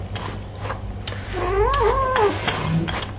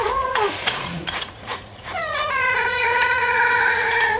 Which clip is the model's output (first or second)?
second